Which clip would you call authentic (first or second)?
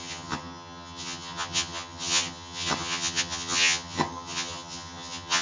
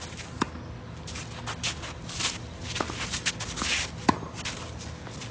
second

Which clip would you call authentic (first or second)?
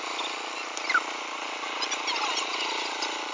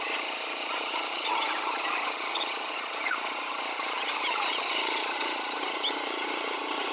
first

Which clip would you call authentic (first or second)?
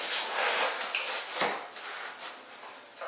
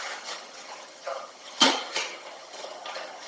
first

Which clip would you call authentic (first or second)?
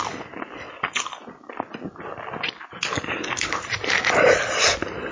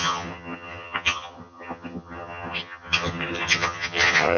first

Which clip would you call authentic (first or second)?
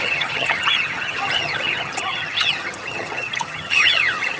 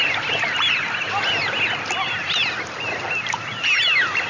second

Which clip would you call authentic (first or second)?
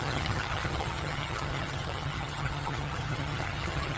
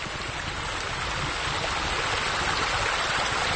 second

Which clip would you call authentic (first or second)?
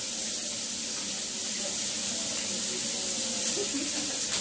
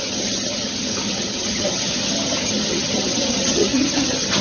first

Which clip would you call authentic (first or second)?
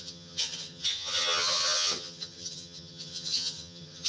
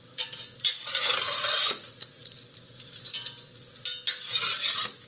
second